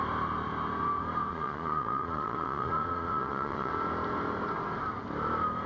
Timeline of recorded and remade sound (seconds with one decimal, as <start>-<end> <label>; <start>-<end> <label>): 0.0-1.3 recorded; 1.3-3.7 remade; 3.7-5.7 recorded